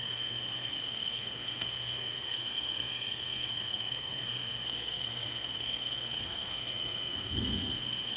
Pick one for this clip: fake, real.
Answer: fake